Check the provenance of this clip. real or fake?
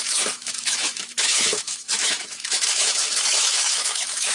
fake